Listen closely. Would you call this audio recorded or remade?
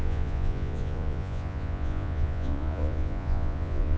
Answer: remade